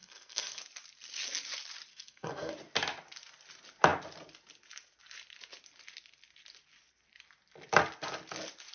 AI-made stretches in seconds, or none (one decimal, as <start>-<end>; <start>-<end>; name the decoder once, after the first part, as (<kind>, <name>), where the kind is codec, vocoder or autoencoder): 0.0-0.6 (codec, SNAC); 1.9-2.5